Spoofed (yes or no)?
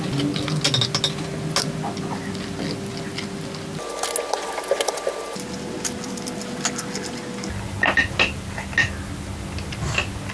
no